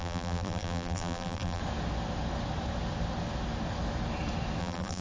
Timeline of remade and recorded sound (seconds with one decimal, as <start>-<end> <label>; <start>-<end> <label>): 0.0-1.6 remade; 1.6-4.6 recorded; 4.6-5.0 remade